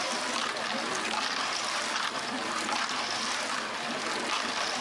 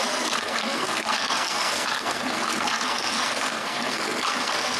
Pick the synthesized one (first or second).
second